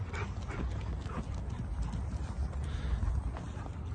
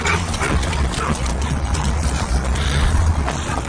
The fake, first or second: second